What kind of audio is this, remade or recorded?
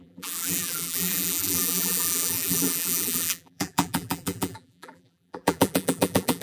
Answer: remade